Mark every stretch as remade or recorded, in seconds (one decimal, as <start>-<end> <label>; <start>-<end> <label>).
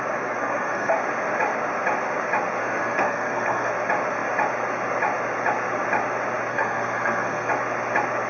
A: 0.0-0.4 recorded; 0.4-0.9 remade; 0.9-2.6 recorded; 2.6-3.7 remade; 3.7-6.5 recorded; 6.5-7.5 remade; 7.5-8.3 recorded